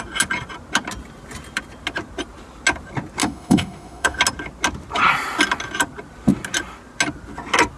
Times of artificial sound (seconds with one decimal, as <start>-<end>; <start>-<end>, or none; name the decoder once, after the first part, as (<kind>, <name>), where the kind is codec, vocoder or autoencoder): 3.2-4.2 (autoencoder, DAC-VAE)